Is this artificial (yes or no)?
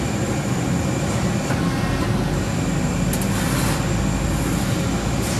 no